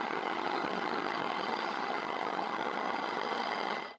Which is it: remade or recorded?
remade